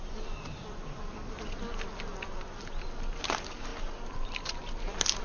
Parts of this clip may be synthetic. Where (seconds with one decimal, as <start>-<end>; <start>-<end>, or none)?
none